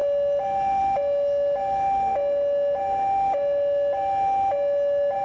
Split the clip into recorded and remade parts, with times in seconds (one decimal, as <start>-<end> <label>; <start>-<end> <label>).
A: 0.0-5.2 recorded